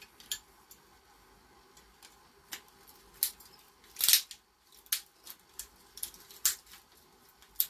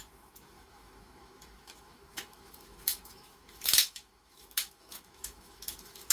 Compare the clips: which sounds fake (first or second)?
second